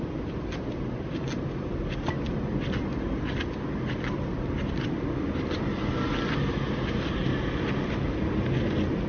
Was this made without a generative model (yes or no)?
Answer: yes